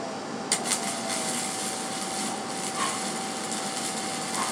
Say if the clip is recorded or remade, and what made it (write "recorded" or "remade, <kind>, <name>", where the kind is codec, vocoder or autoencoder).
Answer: recorded